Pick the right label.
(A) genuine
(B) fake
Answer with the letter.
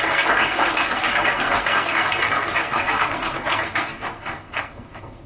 B